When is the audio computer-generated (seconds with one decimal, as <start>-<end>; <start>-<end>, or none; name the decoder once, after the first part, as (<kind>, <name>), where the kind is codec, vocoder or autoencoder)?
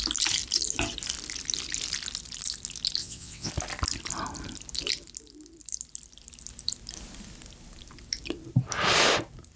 3.0-3.5 (vocoder, WaveNeXt)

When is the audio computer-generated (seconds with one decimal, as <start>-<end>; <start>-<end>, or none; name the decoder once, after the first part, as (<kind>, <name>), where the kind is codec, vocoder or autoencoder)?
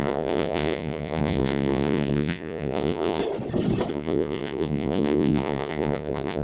0.0-3.2 (vocoder, Vocos); 3.9-6.4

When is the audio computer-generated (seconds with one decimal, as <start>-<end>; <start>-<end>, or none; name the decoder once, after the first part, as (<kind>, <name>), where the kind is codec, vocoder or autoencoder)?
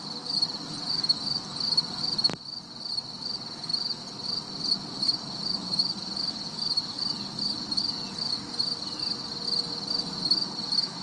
none